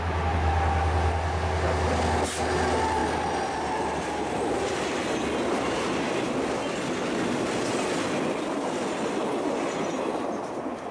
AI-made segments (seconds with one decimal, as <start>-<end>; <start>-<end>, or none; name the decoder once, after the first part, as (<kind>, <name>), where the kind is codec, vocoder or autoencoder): none